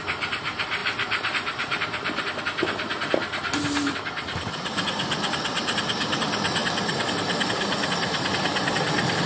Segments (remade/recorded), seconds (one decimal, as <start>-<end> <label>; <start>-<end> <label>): 0.0-9.3 recorded